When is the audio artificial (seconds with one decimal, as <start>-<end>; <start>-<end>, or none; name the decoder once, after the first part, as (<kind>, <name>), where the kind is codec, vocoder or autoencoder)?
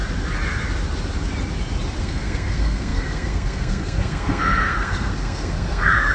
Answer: 2.0-6.1 (codec, SNAC)